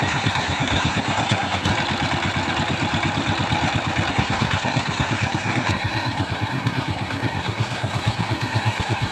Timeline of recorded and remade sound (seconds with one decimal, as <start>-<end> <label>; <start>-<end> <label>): 0.0-1.7 remade; 1.7-4.1 recorded; 4.1-9.1 remade